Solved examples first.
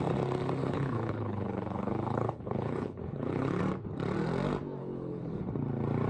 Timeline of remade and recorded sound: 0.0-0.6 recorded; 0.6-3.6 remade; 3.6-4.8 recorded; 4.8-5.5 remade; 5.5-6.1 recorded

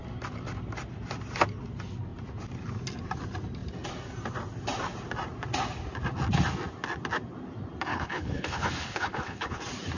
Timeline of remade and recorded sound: 0.0-7.9 recorded; 7.9-9.6 remade; 9.6-10.0 recorded

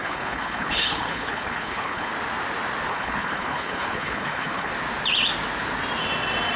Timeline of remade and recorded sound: 0.0-2.1 remade; 2.1-2.9 recorded; 2.9-4.7 remade; 4.7-6.6 recorded

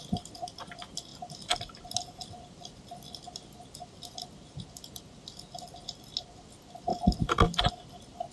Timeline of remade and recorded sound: 0.0-8.3 recorded

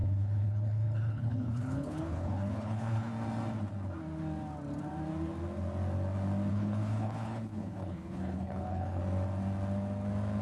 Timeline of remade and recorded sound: 0.0-3.1 remade; 3.1-6.5 recorded; 6.5-9.0 remade; 9.0-10.4 recorded

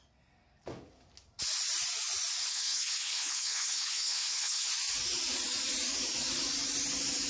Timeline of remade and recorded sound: 0.0-2.4 recorded; 2.4-4.7 remade; 4.7-7.3 recorded

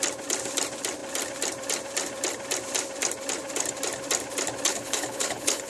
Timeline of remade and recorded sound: 0.0-4.7 recorded; 4.7-5.7 remade

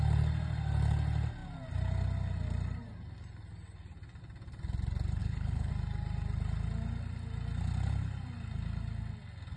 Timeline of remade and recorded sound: 0.0-5.2 recorded; 5.2-5.7 remade; 5.7-9.6 recorded